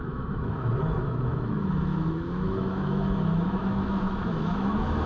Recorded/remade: remade